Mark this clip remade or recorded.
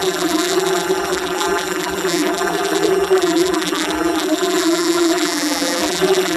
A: remade